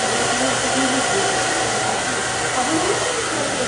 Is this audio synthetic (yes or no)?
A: no